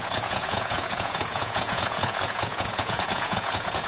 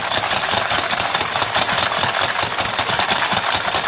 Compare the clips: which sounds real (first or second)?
second